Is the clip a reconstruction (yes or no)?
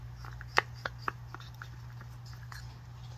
no